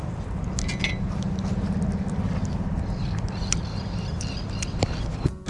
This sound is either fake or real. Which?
real